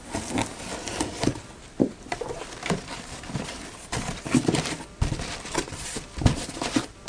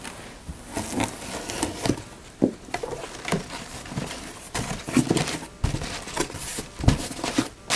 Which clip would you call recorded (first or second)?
second